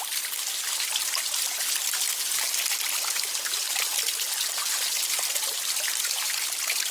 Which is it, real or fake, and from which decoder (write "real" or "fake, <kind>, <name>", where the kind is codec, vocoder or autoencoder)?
real